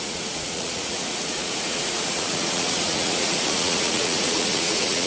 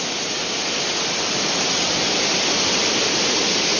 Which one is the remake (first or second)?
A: first